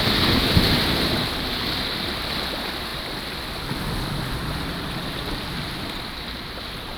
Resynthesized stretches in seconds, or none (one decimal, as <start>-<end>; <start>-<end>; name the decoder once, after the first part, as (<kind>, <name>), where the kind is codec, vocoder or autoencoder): none